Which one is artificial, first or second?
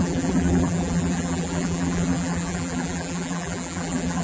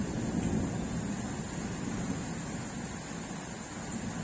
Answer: first